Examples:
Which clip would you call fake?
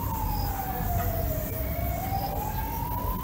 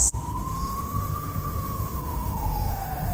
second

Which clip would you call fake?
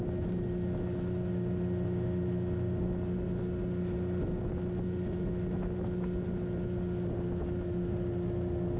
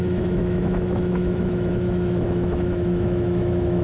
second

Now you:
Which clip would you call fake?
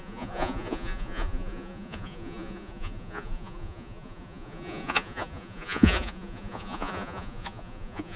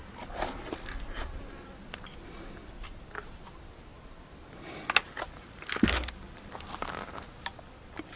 first